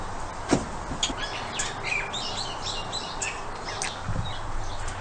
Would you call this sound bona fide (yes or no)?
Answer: yes